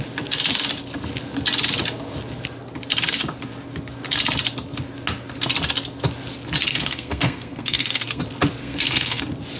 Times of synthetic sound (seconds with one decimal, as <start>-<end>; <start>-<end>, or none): 6.7-8.2; 8.6-9.2

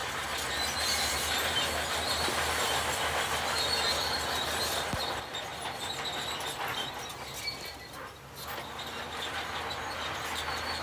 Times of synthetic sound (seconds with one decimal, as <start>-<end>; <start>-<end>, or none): none

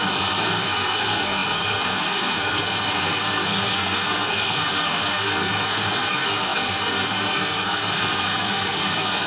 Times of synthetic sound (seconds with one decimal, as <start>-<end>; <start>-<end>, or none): 0.0-9.3

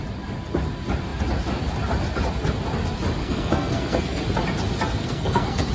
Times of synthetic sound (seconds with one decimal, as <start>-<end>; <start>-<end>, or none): 3.2-4.2; 5.0-5.7